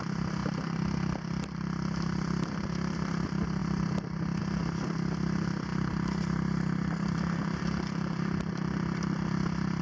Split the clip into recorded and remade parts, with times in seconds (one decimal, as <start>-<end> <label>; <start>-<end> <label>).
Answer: 0.0-9.8 recorded